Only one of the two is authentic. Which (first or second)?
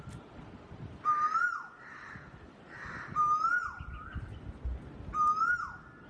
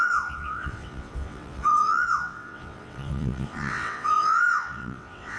first